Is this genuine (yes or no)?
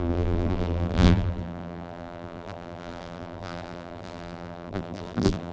no